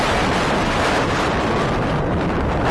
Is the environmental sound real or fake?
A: real